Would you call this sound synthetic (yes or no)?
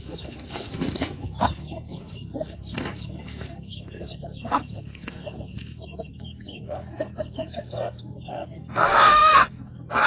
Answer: yes